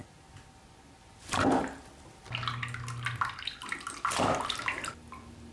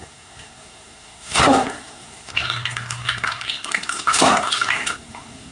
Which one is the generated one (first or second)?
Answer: second